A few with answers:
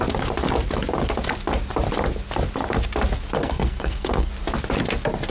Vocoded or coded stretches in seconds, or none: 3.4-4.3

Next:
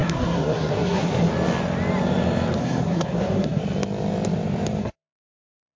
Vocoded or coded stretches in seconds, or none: 0.0-1.3; 2.6-3.6; 4.8-5.8

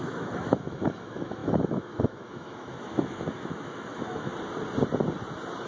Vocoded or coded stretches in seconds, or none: 0.0-4.3

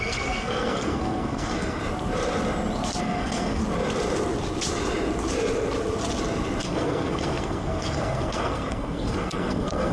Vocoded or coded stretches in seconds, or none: 0.0-1.8; 3.0-3.6; 6.6-9.9

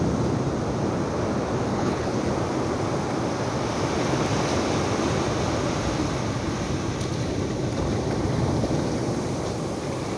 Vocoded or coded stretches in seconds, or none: 1.7-2.3